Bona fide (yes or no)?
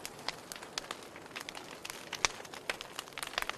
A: yes